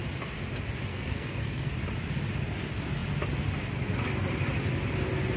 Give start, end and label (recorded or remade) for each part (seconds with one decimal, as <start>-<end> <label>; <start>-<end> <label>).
0.0-0.9 recorded; 0.9-1.7 remade; 1.7-5.4 recorded

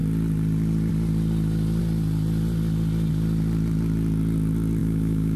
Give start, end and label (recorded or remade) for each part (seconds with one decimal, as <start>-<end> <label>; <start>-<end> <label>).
0.0-4.8 recorded; 4.8-5.4 remade